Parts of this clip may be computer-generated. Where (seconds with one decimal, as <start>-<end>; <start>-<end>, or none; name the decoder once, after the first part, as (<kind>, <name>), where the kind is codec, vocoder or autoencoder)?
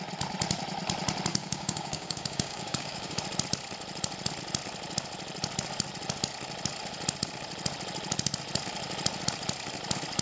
1.3-3.2 (codec, DAC)